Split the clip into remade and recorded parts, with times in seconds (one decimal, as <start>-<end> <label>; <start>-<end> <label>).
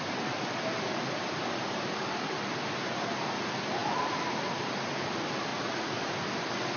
0.0-5.5 recorded; 5.5-6.0 remade; 6.0-6.8 recorded